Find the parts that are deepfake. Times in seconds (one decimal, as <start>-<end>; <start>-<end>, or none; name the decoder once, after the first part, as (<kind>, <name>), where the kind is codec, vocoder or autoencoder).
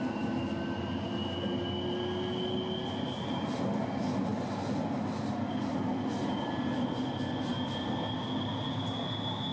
none